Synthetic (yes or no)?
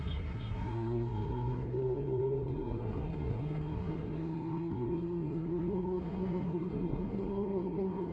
yes